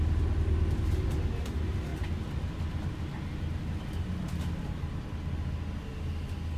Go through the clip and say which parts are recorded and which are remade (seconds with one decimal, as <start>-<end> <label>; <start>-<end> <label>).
0.0-6.6 recorded